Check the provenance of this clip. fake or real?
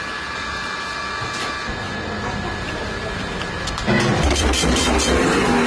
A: real